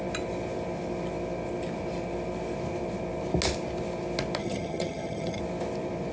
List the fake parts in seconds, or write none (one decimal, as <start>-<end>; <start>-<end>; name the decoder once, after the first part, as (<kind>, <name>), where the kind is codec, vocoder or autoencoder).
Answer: 4.4-5.4 (vocoder, HiFi-GAN)

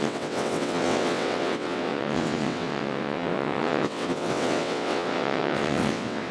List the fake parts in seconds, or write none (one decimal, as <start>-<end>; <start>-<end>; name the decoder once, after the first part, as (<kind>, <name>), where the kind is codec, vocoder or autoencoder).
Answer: 0.0-6.3 (vocoder, WaveNeXt)